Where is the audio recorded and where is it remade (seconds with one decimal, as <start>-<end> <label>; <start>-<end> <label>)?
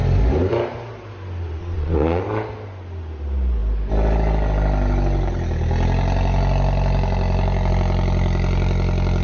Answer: 0.0-1.6 recorded; 1.6-2.2 remade; 2.2-9.2 recorded